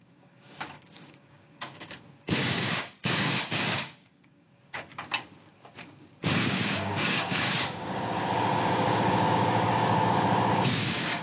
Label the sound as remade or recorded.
remade